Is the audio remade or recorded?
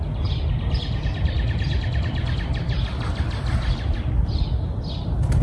recorded